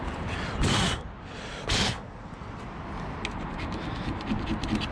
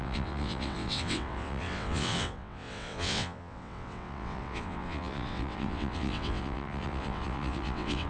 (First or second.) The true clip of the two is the first